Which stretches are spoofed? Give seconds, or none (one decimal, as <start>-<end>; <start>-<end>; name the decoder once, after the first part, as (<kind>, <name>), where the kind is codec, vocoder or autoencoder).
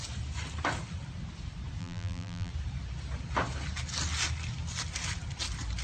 1.8-2.5 (vocoder, BigVGAN v2)